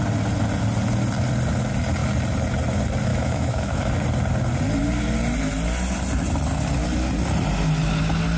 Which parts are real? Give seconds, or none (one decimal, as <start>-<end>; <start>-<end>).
0.0-3.1; 3.9-8.4